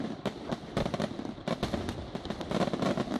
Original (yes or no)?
yes